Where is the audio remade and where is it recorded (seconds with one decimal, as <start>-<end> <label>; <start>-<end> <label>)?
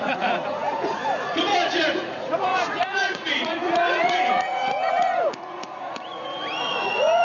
0.0-7.2 remade